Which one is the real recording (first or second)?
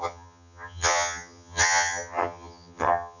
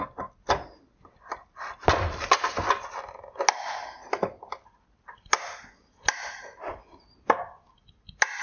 second